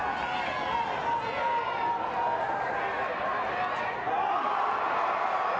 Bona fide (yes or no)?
yes